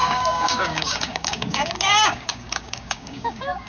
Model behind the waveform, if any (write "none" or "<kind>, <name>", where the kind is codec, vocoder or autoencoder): codec, DAC